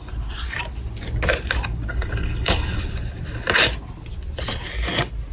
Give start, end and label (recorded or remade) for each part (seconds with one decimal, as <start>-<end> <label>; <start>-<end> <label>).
0.0-1.9 recorded; 1.9-2.8 remade; 2.8-5.3 recorded